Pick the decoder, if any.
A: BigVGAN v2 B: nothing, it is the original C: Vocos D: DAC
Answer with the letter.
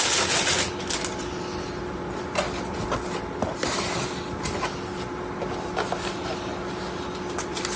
B